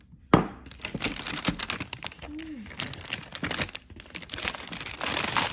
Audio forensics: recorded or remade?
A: recorded